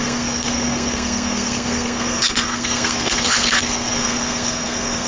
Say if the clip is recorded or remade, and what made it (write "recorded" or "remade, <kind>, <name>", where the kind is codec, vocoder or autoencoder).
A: remade, codec, SNAC